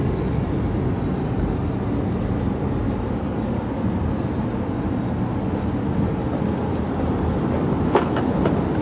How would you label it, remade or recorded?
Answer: recorded